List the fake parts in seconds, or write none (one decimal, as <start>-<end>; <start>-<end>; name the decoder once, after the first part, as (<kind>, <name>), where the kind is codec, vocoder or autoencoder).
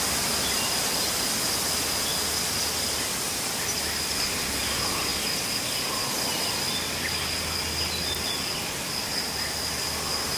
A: none